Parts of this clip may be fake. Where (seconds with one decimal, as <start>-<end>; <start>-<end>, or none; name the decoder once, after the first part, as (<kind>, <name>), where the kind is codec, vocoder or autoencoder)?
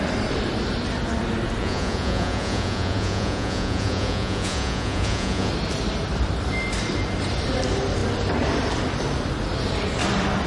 1.6-5.5 (vocoder, Vocos)